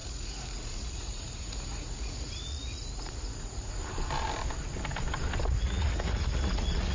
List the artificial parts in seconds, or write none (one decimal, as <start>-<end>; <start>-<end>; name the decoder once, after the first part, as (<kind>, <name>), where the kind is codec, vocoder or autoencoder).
0.0-3.8 (vocoder, Vocos); 5.5-6.9